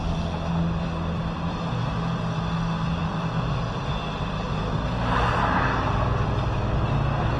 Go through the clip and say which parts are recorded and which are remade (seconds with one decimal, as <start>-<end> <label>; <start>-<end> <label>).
0.0-7.4 recorded